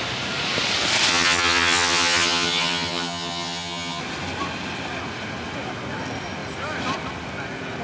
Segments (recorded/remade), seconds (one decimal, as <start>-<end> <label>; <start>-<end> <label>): 0.0-1.1 recorded; 1.1-4.0 remade; 4.0-7.8 recorded